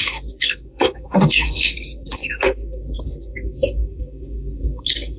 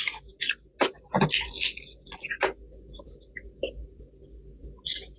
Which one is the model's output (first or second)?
first